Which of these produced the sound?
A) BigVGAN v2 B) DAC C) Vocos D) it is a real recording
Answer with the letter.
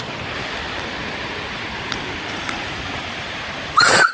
A